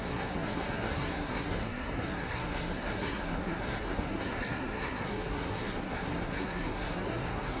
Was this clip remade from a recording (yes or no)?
yes